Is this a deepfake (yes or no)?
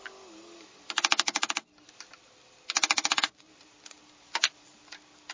no